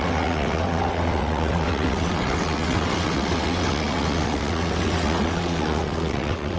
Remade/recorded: remade